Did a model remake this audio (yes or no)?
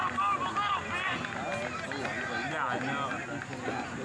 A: no